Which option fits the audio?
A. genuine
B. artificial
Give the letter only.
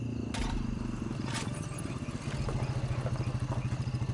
A